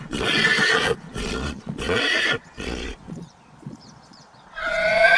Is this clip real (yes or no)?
no